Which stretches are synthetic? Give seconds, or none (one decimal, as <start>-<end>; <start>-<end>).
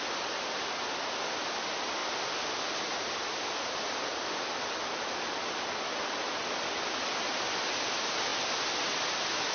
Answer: none